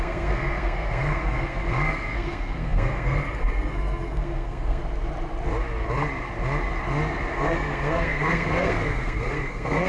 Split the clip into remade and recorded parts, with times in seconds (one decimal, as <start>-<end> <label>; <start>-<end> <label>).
0.0-4.8 remade; 4.8-7.3 recorded; 7.3-9.9 remade